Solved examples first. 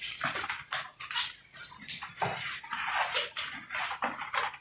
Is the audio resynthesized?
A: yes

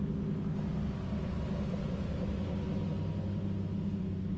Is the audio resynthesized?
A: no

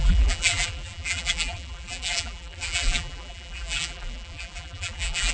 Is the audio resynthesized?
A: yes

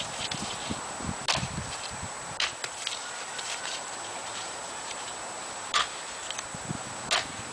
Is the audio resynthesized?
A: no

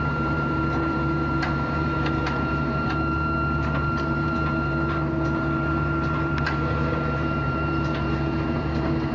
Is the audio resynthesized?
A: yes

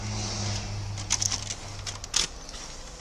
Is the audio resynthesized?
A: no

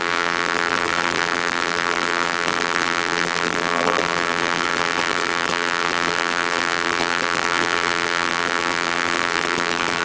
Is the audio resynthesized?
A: yes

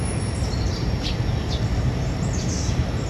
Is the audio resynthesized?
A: yes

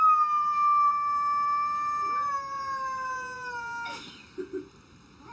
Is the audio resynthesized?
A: no